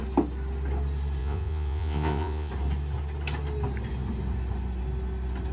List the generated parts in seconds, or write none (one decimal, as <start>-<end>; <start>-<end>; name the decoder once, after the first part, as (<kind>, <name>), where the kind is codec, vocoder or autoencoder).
1.2-2.5 (vocoder, Vocos)